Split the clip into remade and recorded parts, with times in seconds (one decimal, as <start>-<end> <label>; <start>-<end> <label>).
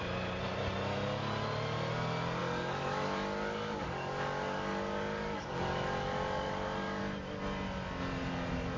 0.0-2.4 recorded; 2.4-7.0 remade; 7.0-8.8 recorded